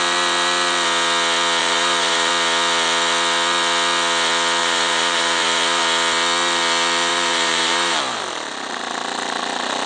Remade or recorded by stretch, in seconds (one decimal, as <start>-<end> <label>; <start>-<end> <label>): 0.0-1.6 recorded; 1.6-2.3 remade; 2.3-4.6 recorded; 4.6-5.8 remade; 5.8-7.1 recorded; 7.1-8.0 remade; 8.0-9.9 recorded